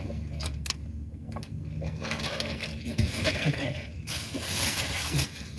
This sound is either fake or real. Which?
fake